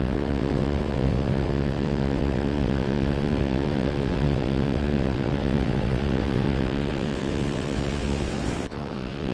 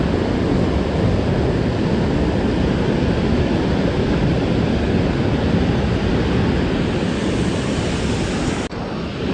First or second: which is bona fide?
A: second